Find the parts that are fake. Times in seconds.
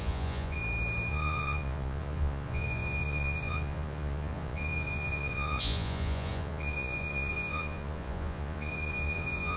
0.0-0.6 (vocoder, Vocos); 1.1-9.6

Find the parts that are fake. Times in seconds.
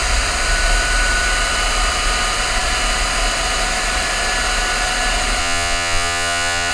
5.4-6.7 (vocoder, Vocos)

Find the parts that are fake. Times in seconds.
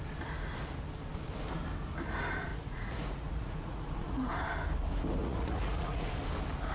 2.5-4.3 (vocoder, Vocos); 5.2-6.1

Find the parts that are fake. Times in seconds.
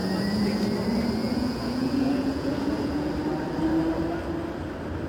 0.0-0.6 (vocoder, Vocos); 1.2-3.1